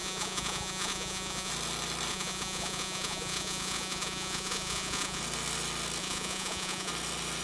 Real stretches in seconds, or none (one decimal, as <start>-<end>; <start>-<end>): 1.5-2.1; 5.2-6.0; 6.9-7.4

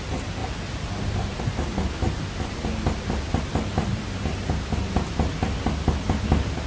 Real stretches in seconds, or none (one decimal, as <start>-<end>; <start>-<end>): 0.0-6.7

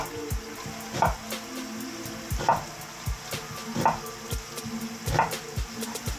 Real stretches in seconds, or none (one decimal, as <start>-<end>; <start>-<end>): 0.0-6.2

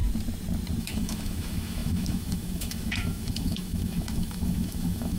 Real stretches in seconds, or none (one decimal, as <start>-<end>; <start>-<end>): 0.0-0.8

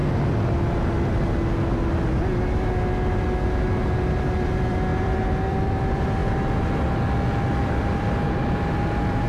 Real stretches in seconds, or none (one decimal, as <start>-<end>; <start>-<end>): 0.0-4.2; 6.2-7.6

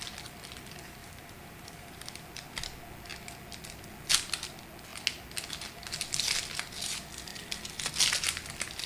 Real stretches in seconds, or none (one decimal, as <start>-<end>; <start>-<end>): 0.0-1.0; 2.3-8.9

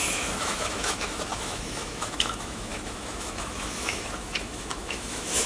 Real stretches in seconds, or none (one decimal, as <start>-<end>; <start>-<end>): none

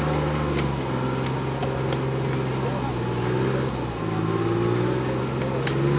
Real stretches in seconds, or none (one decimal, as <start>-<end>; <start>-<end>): 0.0-6.0